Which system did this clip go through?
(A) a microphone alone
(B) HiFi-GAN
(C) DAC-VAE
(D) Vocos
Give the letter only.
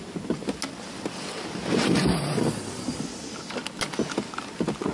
A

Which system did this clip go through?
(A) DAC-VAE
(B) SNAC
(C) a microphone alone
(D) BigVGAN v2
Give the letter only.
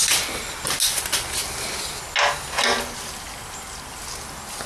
C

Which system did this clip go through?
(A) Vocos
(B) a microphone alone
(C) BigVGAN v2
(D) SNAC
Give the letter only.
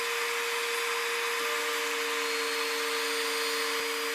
B